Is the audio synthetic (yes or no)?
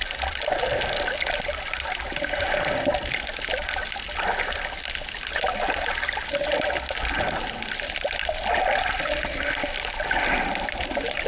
no